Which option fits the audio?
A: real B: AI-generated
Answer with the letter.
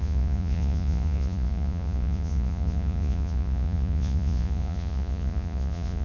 B